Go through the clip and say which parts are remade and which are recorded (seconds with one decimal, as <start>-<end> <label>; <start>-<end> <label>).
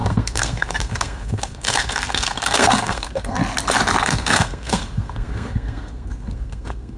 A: 0.0-3.4 remade; 3.4-4.0 recorded; 4.0-7.0 remade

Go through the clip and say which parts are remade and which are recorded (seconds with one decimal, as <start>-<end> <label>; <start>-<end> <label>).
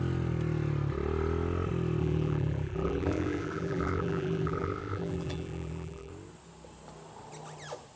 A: 0.0-2.0 recorded; 2.0-6.1 remade; 6.1-8.0 recorded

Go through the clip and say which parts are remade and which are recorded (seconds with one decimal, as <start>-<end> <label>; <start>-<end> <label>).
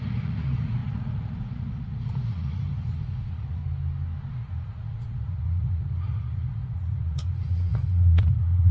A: 0.0-3.6 remade; 3.6-4.3 recorded; 4.3-8.7 remade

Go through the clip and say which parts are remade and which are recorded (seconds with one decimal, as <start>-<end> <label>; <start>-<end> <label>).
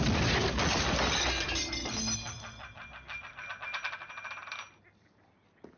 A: 0.0-5.8 recorded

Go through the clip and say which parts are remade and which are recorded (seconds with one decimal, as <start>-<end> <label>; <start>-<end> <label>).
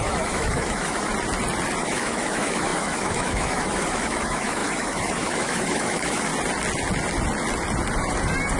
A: 0.0-1.1 remade; 1.1-1.8 recorded; 1.8-6.3 remade; 6.3-8.6 recorded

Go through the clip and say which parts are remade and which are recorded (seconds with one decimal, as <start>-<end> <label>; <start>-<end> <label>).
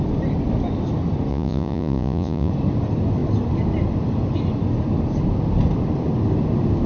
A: 0.0-1.3 recorded; 1.3-2.5 remade; 2.5-6.9 recorded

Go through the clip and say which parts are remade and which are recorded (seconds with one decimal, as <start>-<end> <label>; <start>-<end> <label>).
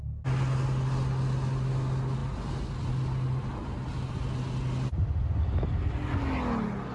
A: 0.0-6.9 recorded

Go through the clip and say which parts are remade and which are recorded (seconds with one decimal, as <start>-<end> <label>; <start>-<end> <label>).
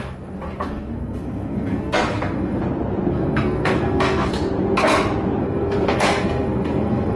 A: 0.0-2.6 remade; 2.6-3.1 recorded; 3.1-4.4 remade; 4.4-5.4 recorded; 5.4-7.2 remade